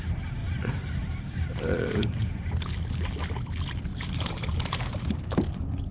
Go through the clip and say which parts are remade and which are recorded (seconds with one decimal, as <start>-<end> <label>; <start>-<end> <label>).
0.0-0.4 recorded; 0.4-2.5 remade; 2.5-3.9 recorded; 3.9-5.2 remade; 5.2-5.9 recorded

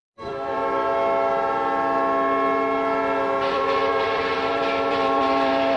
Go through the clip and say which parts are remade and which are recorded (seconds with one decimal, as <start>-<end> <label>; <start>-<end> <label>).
0.0-0.6 remade; 0.6-3.5 recorded; 3.5-5.8 remade